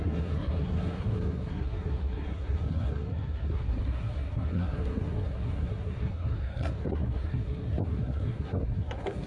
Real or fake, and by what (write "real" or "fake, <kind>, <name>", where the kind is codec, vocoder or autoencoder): fake, codec, SNAC